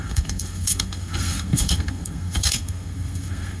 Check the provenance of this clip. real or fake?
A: fake